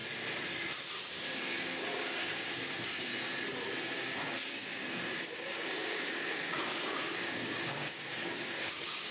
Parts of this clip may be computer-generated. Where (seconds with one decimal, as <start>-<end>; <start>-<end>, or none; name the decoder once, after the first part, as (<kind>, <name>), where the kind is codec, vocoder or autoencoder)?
1.3-3.1 (codec, DAC); 3.8-9.1